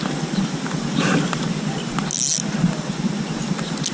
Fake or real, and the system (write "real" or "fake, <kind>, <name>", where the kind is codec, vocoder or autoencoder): real